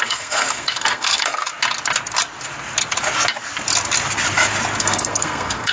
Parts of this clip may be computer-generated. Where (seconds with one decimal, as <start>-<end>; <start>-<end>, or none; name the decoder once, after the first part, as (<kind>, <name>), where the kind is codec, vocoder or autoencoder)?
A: 0.0-1.4 (codec, SNAC); 4.8-5.7